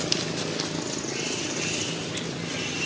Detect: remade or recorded recorded